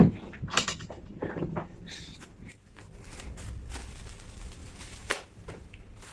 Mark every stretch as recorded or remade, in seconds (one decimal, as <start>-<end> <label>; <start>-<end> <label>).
0.0-0.5 recorded; 0.5-3.4 remade; 3.4-4.6 recorded; 4.6-6.1 remade